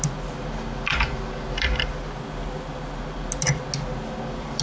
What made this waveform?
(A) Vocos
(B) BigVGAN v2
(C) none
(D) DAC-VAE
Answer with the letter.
C